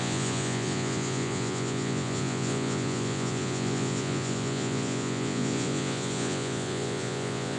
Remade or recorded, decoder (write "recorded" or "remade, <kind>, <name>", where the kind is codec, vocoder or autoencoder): remade, vocoder, Vocos